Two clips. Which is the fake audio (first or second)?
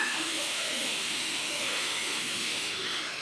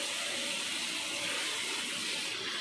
first